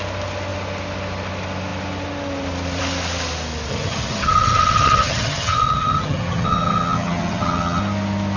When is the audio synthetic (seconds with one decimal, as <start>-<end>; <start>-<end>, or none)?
3.7-7.8